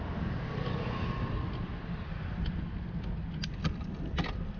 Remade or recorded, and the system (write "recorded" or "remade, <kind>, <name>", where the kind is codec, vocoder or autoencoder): recorded